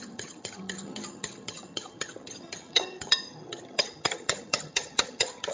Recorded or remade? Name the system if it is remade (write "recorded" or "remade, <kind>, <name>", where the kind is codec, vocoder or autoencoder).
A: remade, vocoder, HiFi-GAN